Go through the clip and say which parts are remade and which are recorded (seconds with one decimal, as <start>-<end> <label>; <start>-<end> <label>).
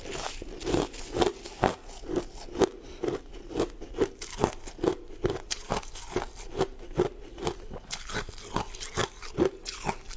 0.0-10.2 recorded